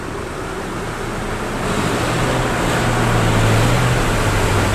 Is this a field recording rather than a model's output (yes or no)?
yes